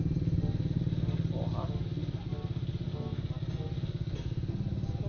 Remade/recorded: recorded